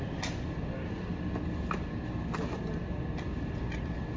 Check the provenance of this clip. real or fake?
real